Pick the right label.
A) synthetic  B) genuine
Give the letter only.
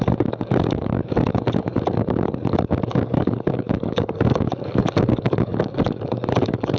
A